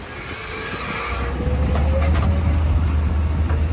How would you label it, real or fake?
real